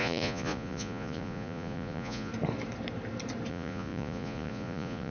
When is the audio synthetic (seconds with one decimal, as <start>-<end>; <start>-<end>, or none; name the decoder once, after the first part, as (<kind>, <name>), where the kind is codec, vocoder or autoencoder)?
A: 0.0-2.3 (vocoder, Vocos); 3.5-5.1